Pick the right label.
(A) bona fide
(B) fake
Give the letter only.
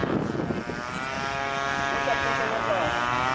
A